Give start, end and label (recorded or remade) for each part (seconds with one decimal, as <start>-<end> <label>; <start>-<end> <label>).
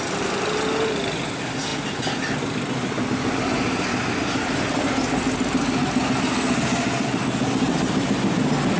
0.0-8.8 recorded